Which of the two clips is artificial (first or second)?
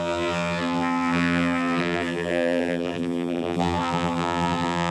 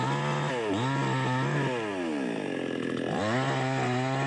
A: first